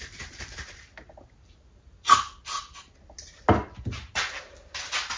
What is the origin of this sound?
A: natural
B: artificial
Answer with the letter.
A